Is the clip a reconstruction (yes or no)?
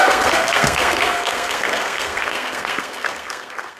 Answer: yes